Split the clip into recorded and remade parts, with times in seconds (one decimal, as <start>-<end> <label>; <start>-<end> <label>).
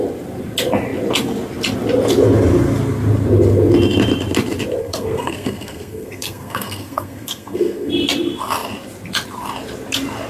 0.0-4.8 recorded; 4.8-7.9 remade; 7.9-10.3 recorded